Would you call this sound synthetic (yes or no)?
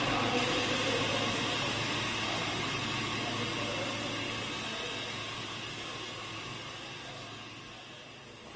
no